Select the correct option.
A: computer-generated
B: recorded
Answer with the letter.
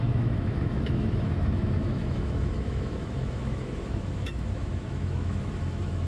A